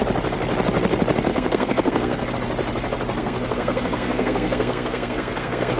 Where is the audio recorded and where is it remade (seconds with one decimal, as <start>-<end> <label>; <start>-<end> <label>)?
0.0-1.3 recorded; 1.3-2.3 remade; 2.3-3.2 recorded; 3.2-5.8 remade